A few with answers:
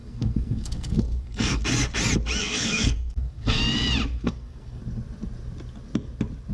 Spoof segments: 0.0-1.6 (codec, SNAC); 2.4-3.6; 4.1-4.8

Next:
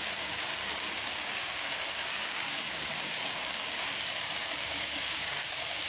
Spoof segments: 0.0-5.9 (codec, DAC)

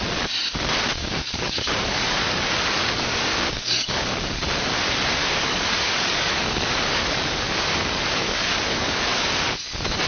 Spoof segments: 1.0-4.4 (codec, DAC); 5.2-9.6

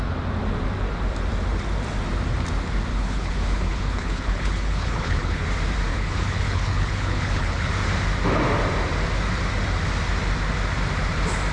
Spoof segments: 2.9-5.4 (codec, HILCodec); 5.9-7.7